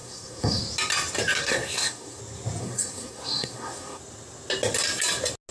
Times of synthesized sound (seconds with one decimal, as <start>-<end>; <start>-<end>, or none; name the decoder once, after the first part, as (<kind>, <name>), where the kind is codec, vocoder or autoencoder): 0.0-0.6 (codec, SNAC); 1.4-2.2; 2.6-4.0